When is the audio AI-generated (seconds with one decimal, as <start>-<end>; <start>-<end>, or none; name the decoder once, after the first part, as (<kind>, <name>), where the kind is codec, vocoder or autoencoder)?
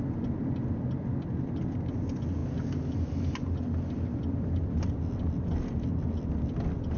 none